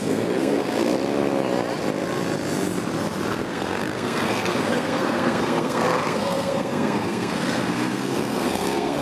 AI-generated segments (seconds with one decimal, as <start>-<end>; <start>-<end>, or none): 0.0-0.9; 3.3-9.0